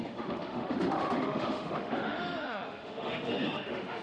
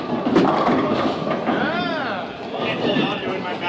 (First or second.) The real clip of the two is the second